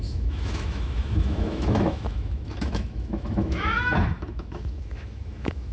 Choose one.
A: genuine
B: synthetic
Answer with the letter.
B